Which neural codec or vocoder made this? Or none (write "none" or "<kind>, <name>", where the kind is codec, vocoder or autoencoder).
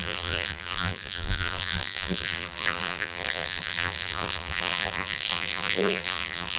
vocoder, BigVGAN v2